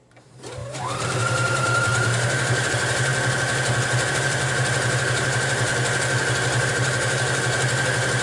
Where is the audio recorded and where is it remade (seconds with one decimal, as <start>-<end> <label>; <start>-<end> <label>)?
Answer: 0.0-3.1 remade; 3.1-4.1 recorded; 4.1-5.7 remade; 5.7-6.7 recorded; 6.7-8.2 remade